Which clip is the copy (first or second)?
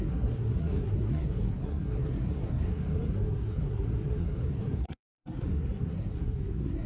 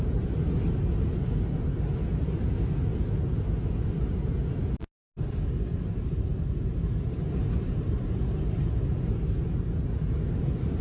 first